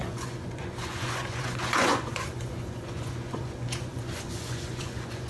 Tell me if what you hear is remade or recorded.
remade